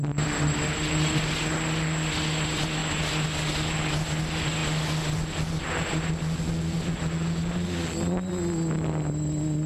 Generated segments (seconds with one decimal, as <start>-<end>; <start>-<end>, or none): none